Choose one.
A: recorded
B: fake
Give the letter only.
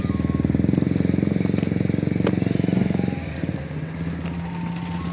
A